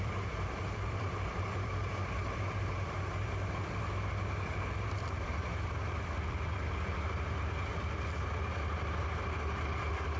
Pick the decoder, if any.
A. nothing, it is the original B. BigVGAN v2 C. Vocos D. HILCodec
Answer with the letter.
B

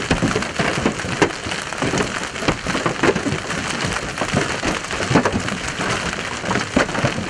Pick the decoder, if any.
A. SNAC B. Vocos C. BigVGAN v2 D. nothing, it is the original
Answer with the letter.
D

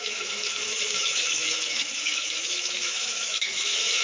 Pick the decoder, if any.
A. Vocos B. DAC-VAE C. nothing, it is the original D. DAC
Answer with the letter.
B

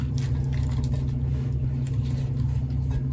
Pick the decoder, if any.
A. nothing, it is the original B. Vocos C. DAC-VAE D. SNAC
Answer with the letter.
A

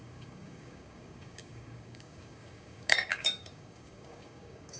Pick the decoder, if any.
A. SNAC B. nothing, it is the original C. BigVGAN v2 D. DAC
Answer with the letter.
D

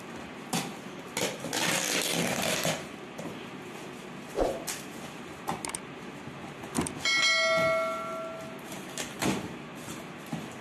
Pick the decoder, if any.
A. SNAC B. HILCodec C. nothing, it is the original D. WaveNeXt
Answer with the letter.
C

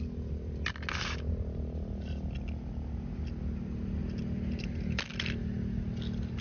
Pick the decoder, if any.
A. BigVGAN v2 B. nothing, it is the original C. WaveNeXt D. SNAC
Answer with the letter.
B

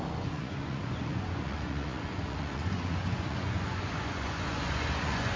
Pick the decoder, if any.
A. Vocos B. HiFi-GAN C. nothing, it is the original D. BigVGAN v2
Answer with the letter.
A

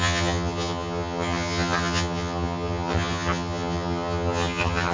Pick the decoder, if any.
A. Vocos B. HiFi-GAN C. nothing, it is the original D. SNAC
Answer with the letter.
B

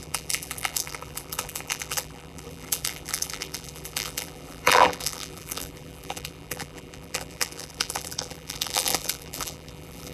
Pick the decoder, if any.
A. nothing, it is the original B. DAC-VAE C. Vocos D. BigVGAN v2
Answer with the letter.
D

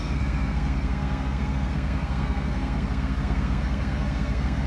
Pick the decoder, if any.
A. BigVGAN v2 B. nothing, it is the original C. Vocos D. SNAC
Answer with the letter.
D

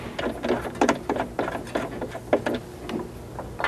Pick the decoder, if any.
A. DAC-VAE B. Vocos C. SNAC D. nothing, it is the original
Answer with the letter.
D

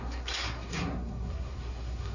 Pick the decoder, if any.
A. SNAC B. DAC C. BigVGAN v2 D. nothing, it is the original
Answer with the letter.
A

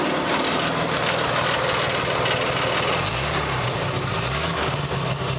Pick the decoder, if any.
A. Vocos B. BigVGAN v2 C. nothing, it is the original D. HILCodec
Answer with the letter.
C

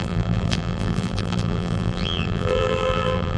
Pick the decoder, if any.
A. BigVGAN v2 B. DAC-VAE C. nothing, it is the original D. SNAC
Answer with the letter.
A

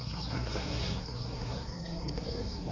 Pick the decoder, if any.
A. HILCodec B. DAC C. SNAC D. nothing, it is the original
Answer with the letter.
C